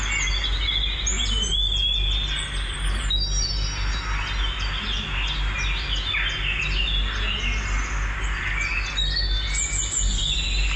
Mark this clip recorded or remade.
recorded